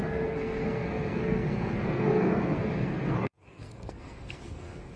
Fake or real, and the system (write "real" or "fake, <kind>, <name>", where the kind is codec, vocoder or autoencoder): fake, codec, SNAC